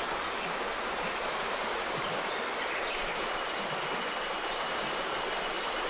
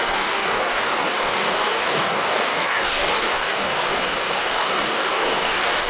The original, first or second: first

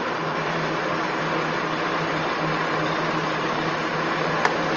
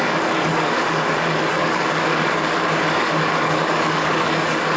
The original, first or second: first